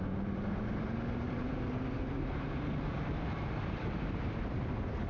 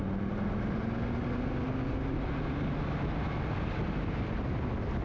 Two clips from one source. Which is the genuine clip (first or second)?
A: second